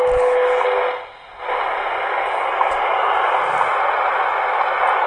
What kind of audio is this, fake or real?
real